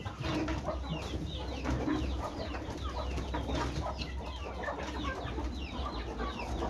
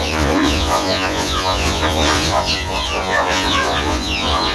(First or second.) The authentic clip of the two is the first